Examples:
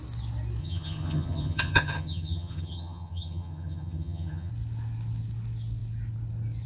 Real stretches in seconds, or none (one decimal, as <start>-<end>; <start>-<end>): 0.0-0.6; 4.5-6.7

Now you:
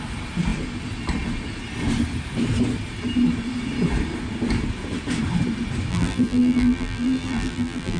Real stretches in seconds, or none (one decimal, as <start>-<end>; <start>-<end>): 0.0-5.9

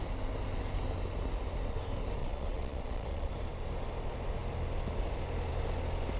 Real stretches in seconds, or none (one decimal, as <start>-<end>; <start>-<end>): 0.0-2.2; 3.3-6.2